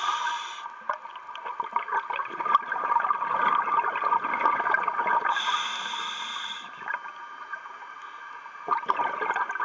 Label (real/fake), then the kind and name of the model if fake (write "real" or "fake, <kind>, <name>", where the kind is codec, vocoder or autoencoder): real